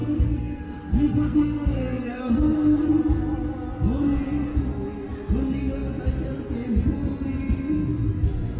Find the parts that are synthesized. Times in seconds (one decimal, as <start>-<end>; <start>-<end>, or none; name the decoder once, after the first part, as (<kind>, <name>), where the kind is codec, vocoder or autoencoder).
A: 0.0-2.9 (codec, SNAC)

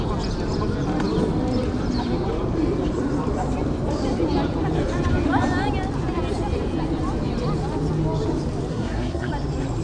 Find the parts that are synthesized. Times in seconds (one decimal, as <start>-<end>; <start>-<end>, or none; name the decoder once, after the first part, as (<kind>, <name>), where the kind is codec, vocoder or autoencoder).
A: 8.7-9.3 (codec, SNAC)

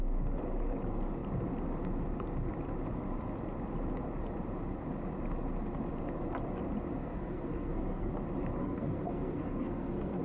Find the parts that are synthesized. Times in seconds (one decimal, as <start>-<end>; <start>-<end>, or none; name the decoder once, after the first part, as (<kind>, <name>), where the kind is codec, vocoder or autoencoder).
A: 7.0-8.1 (codec, SNAC); 8.6-10.2

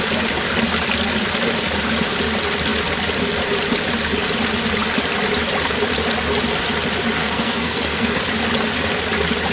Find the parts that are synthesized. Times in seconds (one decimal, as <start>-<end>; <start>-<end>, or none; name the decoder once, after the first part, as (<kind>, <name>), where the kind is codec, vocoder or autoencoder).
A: 7.2-8.2 (codec, SNAC)

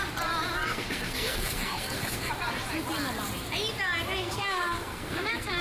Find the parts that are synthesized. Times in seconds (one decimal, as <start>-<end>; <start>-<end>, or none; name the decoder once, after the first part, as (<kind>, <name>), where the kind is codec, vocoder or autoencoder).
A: 0.6-2.3 (codec, SNAC); 4.2-5.6

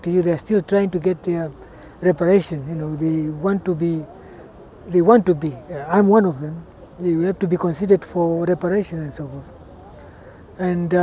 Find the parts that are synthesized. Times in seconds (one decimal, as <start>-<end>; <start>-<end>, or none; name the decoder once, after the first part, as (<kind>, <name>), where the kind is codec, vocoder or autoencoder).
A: none